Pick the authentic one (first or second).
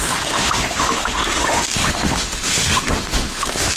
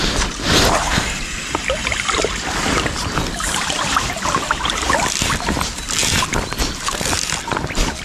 second